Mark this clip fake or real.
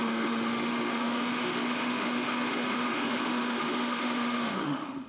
fake